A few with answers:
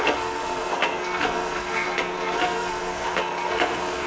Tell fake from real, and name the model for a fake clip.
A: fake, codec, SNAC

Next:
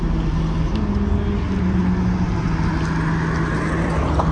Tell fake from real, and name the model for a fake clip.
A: real